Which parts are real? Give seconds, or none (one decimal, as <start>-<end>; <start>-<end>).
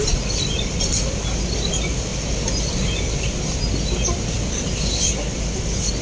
0.0-6.0